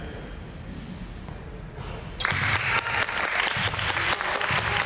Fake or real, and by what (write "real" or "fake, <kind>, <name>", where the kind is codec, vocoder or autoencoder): real